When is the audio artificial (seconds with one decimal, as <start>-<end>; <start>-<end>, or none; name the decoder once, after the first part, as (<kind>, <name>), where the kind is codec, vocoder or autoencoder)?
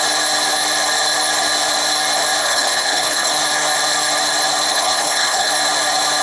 2.4-3.3 (codec, HILCodec); 4.7-5.5